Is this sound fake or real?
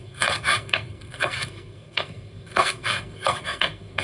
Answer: fake